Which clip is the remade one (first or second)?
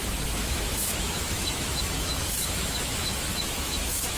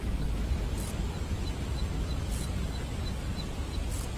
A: first